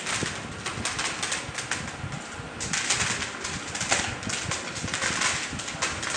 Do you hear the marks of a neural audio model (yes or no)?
no